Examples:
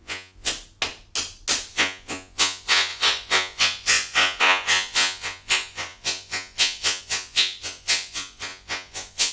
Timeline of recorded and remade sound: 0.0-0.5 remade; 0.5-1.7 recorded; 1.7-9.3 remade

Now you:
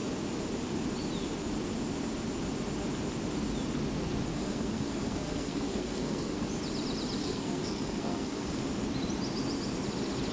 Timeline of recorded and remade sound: 0.0-4.3 recorded; 4.3-6.5 remade; 6.5-7.2 recorded; 7.2-8.6 remade; 8.6-10.3 recorded

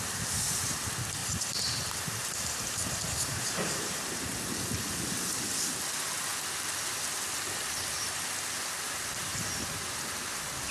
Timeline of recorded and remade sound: 0.0-1.2 recorded; 1.2-4.2 remade; 4.2-9.3 recorded; 9.3-9.9 remade; 9.9-10.7 recorded

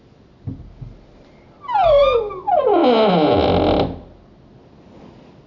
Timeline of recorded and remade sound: 0.0-5.5 recorded

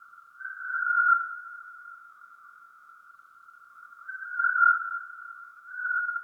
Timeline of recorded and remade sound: 0.0-0.7 recorded; 0.7-3.0 remade; 3.0-3.7 recorded; 3.7-4.6 remade; 4.6-5.4 recorded; 5.4-6.2 remade